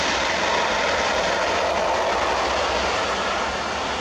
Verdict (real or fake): real